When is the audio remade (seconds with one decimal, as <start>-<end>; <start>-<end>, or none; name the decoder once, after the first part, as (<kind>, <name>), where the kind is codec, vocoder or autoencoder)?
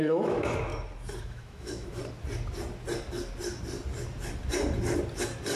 0.0-0.7 (autoencoder, DAC-VAE); 1.2-2.0